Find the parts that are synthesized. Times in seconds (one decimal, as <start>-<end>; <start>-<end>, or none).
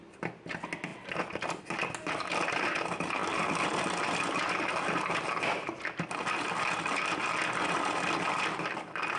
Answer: none